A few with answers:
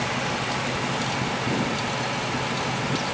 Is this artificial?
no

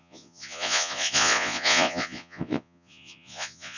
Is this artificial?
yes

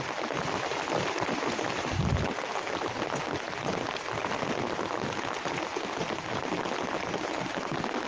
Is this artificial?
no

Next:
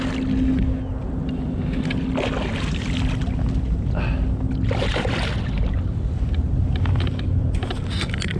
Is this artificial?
no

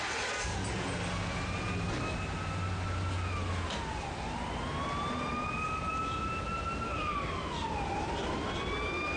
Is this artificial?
no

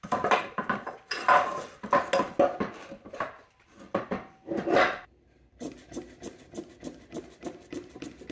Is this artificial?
no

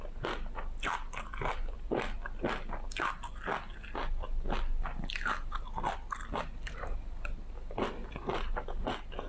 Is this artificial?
no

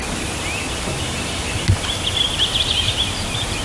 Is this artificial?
no